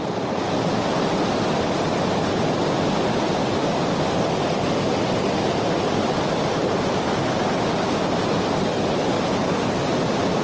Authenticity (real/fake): real